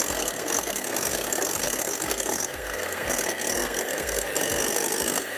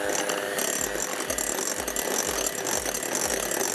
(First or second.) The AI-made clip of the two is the first